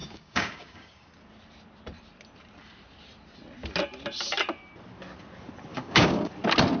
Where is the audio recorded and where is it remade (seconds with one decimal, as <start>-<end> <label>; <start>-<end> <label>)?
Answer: 0.0-1.1 remade; 1.1-5.7 recorded; 5.7-6.3 remade; 6.3-6.8 recorded